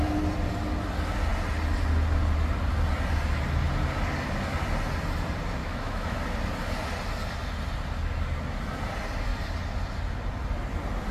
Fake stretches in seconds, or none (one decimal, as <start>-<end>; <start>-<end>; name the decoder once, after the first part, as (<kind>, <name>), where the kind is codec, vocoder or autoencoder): 5.6-6.2 (autoencoder, DAC-VAE)